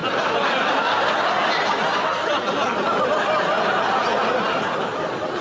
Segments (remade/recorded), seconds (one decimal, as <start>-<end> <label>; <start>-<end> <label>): 0.0-5.4 recorded

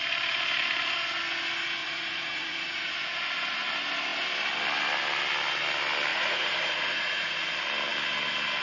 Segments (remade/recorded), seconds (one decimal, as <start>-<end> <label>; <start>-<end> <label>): 0.0-1.8 recorded; 1.8-2.9 remade; 2.9-6.1 recorded; 6.1-7.5 remade; 7.5-8.6 recorded

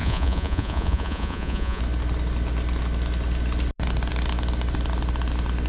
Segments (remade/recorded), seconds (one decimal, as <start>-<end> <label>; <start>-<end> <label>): 0.0-1.8 remade; 1.8-5.7 recorded

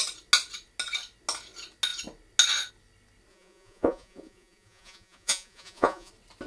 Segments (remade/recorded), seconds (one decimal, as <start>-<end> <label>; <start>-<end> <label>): 0.0-3.3 recorded; 3.3-6.1 remade; 6.1-6.5 recorded

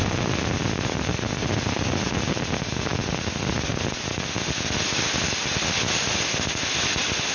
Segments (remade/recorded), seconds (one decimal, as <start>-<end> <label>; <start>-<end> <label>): 0.0-7.3 recorded

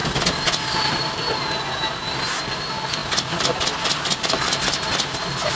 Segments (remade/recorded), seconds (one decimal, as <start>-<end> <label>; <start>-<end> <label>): 0.0-5.5 recorded